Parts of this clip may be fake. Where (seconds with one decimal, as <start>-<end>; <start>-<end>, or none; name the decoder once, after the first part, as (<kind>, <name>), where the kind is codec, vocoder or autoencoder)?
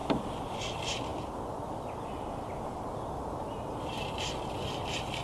0.0-0.6 (vocoder, BigVGAN v2); 1.1-4.2